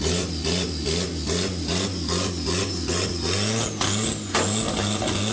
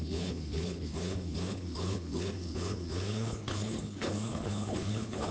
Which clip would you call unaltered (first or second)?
first